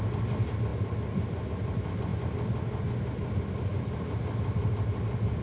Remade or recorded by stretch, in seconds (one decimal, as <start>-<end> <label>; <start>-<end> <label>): 0.0-5.4 recorded